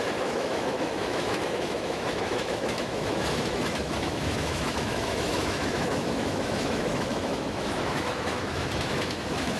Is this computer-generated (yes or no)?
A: yes